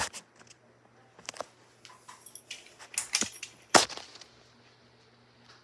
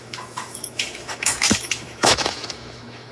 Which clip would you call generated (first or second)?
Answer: second